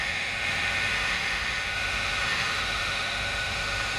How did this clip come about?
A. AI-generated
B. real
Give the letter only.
A